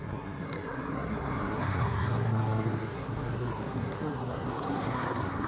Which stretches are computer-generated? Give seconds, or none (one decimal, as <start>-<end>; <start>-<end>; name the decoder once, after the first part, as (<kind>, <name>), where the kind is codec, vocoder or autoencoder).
0.0-5.5 (codec, SNAC)